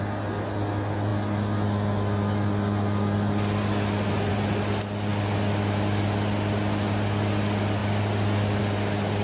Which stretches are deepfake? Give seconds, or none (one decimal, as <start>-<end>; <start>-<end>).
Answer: none

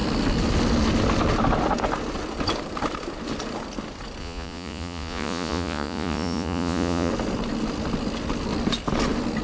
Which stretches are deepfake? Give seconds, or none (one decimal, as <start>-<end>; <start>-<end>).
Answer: 4.2-7.1

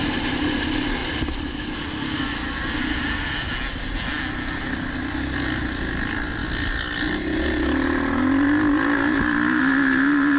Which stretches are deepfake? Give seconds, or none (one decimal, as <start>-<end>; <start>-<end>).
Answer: none

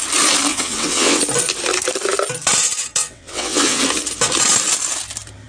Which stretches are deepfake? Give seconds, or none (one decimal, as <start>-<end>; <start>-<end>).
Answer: 0.5-1.2; 3.0-3.8

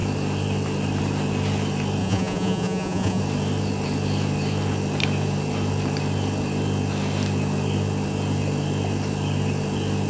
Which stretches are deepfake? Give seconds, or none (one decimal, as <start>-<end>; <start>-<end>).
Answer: 2.0-3.2